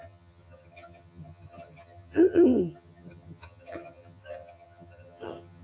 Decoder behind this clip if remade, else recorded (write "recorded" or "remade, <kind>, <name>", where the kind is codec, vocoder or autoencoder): remade, vocoder, HiFi-GAN